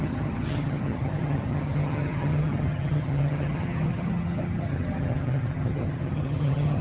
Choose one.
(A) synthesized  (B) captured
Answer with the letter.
A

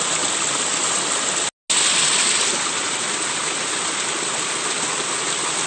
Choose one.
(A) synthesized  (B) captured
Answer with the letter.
B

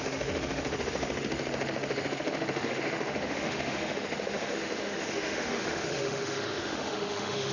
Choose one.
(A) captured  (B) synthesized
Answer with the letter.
B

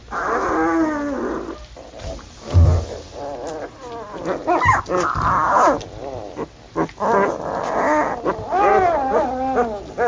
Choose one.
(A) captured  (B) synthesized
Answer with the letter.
A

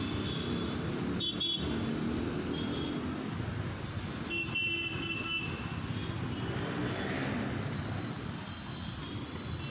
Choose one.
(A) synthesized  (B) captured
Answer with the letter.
B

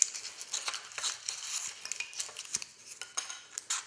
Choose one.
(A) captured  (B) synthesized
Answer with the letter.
A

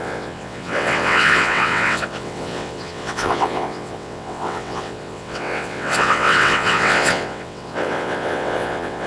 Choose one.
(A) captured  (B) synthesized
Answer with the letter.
B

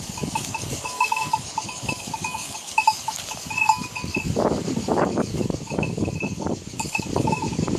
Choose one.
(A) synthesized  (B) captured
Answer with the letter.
A